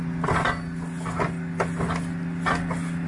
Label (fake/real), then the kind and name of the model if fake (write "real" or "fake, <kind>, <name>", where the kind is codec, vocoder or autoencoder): real